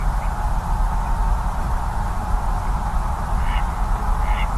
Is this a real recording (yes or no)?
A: no